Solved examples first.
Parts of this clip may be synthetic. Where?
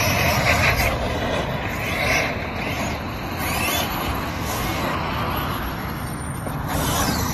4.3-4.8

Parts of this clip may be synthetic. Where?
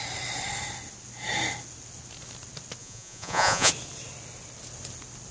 2.8-3.7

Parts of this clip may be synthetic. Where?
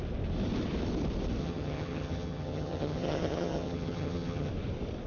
1.4-4.5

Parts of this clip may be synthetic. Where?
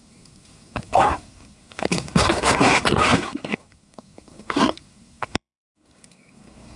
0.0-6.8